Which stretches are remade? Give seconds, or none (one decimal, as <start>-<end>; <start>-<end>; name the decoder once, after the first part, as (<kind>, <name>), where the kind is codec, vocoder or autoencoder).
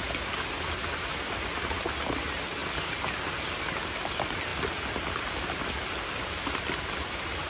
none